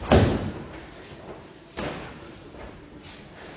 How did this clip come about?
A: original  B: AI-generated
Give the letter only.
B